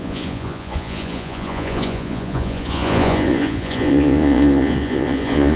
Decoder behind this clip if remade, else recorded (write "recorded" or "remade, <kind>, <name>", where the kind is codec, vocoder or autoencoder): remade, vocoder, Vocos